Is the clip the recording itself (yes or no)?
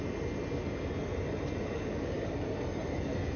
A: yes